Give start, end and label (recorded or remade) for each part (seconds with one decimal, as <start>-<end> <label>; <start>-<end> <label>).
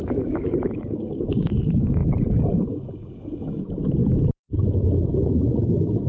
0.0-2.0 remade; 2.0-2.6 recorded; 2.6-6.1 remade